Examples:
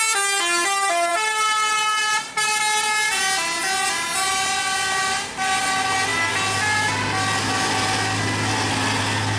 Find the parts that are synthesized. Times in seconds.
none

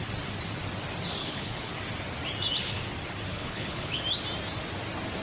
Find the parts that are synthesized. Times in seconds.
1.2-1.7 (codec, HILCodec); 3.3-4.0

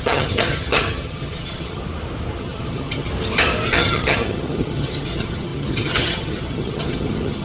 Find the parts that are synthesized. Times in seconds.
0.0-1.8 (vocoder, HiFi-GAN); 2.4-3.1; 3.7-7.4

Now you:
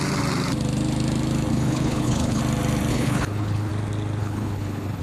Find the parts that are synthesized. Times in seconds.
1.5-2.4 (codec, HILCodec); 2.9-3.7; 4.2-5.0

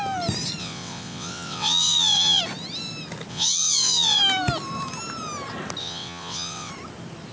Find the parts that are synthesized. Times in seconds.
0.6-2.4 (vocoder, WaveNeXt); 3.3-4.2; 5.8-6.7